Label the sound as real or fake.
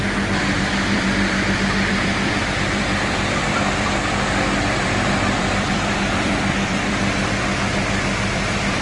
fake